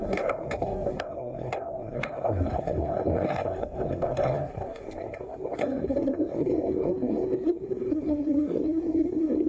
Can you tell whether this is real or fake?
fake